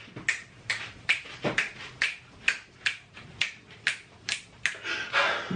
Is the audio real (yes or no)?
yes